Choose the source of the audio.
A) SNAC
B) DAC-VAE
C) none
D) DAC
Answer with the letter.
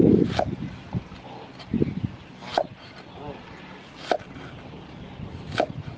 C